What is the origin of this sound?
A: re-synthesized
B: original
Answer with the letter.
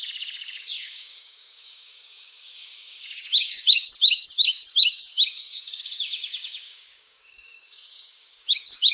A